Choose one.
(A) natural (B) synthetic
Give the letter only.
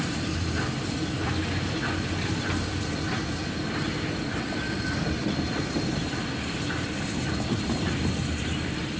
B